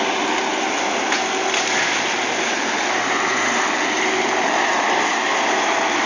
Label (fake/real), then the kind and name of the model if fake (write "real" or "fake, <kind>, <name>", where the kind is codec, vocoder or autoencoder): real